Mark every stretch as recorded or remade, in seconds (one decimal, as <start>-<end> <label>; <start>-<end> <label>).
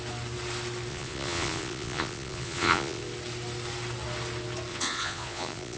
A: 0.0-0.9 recorded; 0.9-3.0 remade; 3.0-4.7 recorded; 4.7-5.8 remade